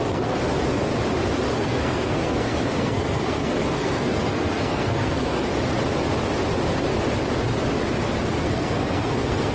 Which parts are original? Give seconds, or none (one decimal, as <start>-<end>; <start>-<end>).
0.4-1.5; 5.5-8.4